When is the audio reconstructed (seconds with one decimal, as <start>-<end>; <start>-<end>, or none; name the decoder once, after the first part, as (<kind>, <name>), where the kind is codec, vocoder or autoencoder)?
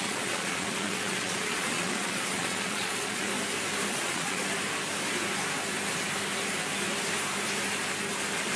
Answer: 0.0-3.3 (vocoder, Vocos); 3.9-4.4